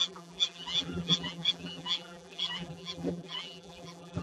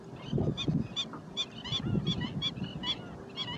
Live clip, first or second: second